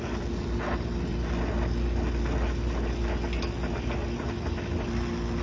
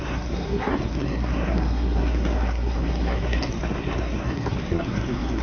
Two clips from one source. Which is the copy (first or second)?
second